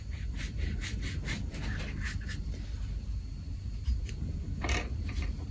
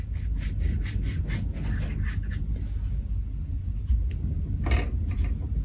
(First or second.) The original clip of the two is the second